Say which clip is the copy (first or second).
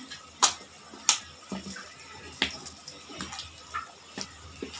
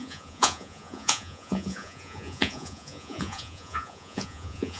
second